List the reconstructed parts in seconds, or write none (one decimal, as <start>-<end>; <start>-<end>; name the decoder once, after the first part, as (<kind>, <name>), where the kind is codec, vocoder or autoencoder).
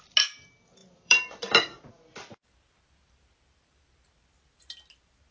0.8-1.9 (vocoder, BigVGAN v2)